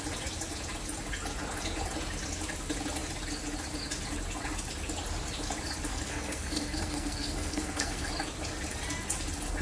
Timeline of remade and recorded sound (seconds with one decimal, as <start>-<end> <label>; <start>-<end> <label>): 0.0-5.9 recorded; 5.9-8.1 remade; 8.1-9.6 recorded